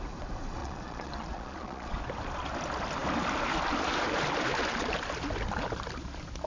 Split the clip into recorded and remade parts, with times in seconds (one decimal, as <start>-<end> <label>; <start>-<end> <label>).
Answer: 0.0-0.6 recorded; 0.6-2.0 remade; 2.0-6.5 recorded